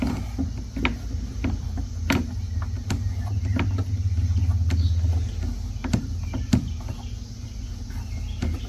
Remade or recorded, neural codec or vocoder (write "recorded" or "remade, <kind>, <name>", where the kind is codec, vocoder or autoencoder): recorded